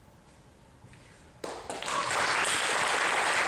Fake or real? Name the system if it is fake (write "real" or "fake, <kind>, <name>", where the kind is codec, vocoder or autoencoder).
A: real